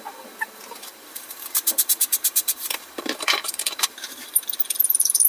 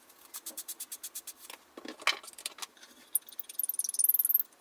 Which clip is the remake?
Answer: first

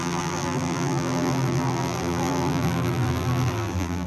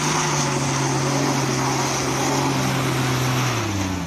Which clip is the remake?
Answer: first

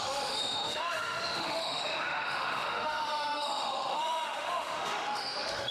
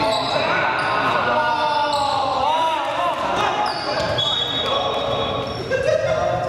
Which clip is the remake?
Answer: first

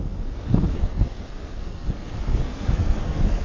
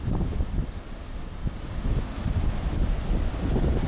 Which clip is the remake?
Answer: first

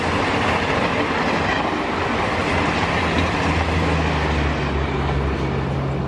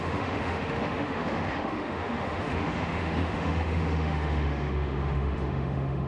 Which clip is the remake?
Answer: second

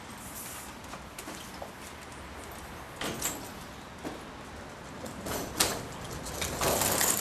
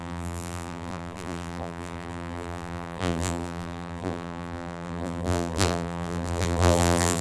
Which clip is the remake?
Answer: second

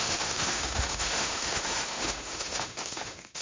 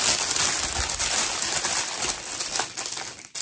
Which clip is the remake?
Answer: first